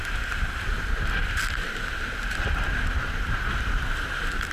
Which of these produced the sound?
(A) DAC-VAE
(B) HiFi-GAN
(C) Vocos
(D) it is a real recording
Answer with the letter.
D